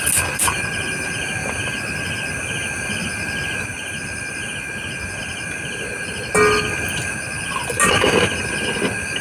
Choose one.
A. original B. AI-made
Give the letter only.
A